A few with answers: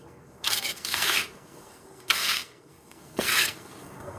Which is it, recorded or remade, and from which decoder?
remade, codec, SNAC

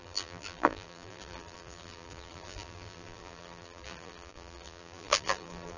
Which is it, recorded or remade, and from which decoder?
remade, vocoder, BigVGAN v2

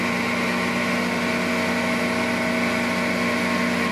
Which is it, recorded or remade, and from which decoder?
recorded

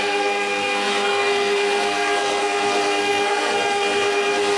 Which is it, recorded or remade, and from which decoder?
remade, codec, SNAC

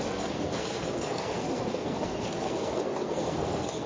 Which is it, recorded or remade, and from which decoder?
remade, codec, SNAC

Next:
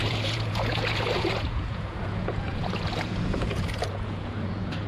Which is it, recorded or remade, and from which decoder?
remade, vocoder, Vocos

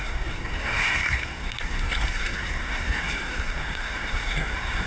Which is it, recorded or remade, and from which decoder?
remade, codec, SNAC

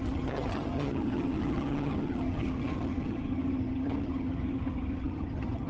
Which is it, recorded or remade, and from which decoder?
remade, vocoder, HiFi-GAN